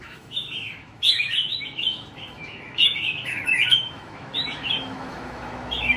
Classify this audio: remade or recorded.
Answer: remade